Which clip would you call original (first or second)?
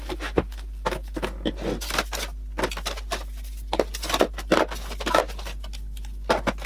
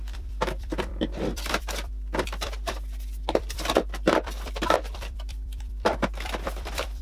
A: first